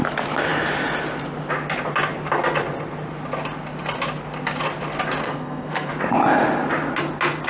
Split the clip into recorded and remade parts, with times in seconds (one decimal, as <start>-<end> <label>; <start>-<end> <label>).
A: 0.0-5.2 recorded; 5.2-5.9 remade; 5.9-7.5 recorded